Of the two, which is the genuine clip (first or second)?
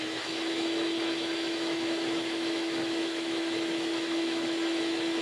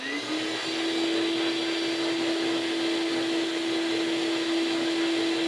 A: second